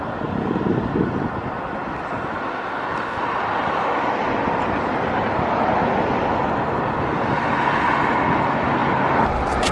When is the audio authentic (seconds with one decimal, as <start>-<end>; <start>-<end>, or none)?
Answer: 0.0-9.7